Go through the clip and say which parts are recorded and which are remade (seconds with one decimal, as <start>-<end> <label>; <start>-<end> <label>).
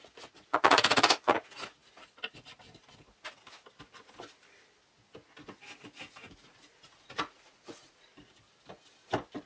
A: 0.0-1.8 remade; 1.8-6.3 recorded; 6.3-8.1 remade; 8.1-9.5 recorded